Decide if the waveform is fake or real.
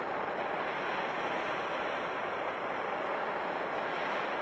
real